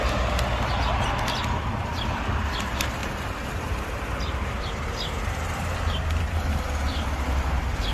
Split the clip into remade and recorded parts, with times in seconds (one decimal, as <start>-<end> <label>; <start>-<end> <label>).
0.0-3.0 recorded; 3.0-6.5 remade; 6.5-7.9 recorded